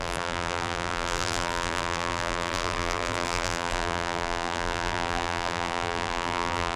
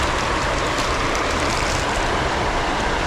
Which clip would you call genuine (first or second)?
second